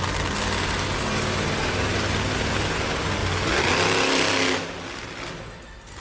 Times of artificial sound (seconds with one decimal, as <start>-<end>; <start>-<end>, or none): none